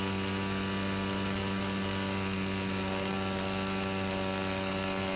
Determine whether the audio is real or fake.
real